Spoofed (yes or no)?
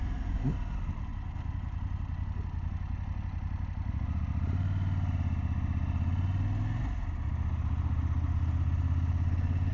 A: no